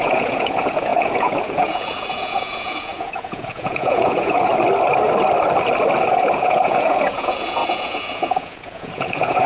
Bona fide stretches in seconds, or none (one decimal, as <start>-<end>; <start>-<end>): 4.5-6.1